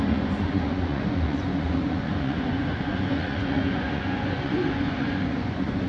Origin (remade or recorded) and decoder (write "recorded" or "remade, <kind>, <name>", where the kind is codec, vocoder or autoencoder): remade, vocoder, Vocos